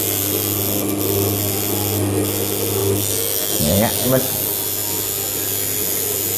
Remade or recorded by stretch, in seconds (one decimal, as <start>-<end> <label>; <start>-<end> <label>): 0.0-6.4 recorded